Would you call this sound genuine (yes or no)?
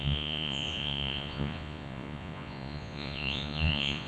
no